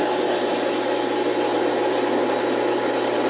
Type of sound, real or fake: real